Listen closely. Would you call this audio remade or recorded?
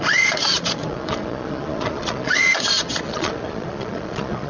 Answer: remade